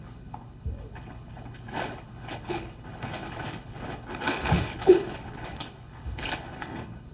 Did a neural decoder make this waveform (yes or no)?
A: yes